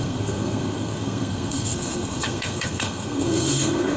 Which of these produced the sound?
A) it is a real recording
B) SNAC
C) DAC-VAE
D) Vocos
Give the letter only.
B